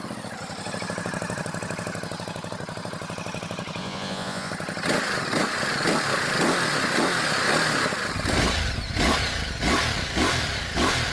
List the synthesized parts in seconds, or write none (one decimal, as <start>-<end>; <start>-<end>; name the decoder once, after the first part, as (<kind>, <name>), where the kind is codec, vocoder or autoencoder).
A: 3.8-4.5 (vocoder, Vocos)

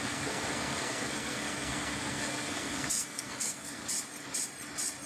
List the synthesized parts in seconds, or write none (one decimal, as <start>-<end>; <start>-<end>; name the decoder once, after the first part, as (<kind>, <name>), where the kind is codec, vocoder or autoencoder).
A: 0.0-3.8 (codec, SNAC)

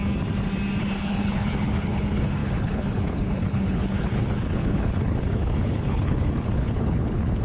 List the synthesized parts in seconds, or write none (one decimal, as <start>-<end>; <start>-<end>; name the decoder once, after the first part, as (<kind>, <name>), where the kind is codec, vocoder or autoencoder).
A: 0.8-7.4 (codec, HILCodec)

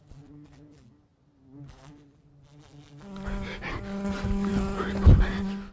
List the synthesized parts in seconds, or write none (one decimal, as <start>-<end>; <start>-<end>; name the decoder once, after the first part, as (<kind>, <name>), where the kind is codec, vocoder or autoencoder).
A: none

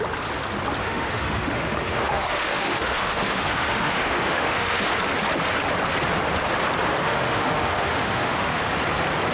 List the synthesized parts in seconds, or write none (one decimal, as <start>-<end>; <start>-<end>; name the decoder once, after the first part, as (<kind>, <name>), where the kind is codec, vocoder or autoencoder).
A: 0.8-4.9 (autoencoder, DAC-VAE); 6.9-8.6